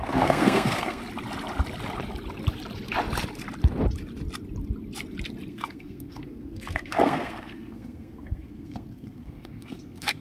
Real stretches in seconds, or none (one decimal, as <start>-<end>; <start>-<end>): 1.0-5.5